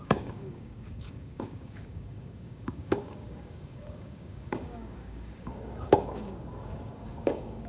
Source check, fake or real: fake